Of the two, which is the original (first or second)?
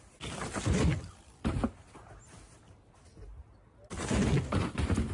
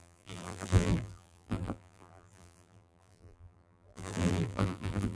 first